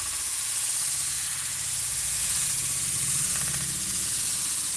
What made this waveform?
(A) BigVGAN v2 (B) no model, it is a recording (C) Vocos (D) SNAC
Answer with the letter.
C